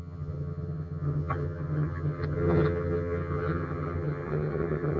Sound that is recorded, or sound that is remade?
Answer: remade